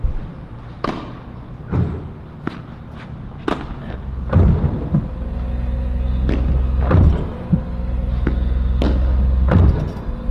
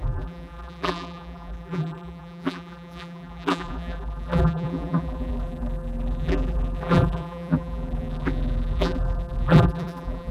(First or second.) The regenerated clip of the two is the second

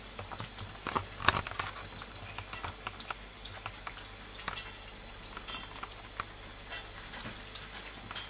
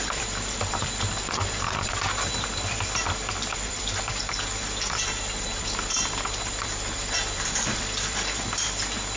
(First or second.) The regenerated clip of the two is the second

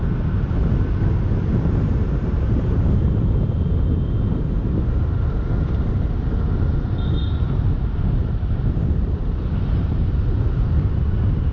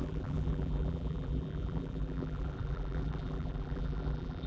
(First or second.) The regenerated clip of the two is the second